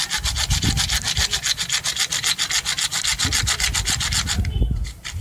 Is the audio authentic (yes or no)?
yes